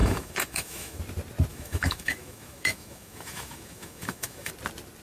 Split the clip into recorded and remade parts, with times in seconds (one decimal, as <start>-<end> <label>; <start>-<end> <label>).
0.0-1.0 remade; 1.0-1.5 recorded; 1.5-4.5 remade; 4.5-5.0 recorded